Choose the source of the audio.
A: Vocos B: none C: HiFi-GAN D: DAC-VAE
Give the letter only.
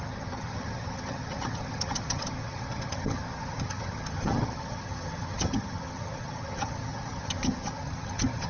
C